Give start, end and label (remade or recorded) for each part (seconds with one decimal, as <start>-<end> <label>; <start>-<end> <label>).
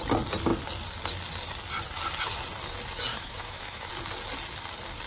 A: 0.0-3.1 recorded; 3.1-3.9 remade; 3.9-5.1 recorded